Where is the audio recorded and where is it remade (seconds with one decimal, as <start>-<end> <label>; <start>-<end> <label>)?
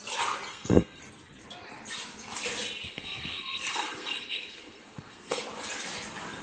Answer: 0.0-0.5 recorded; 0.5-1.0 remade; 1.0-2.9 recorded; 2.9-5.4 remade; 5.4-6.4 recorded